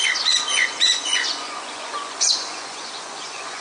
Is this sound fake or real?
fake